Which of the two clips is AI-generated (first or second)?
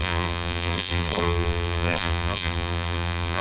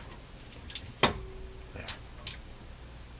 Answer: first